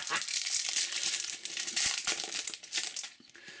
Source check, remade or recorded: recorded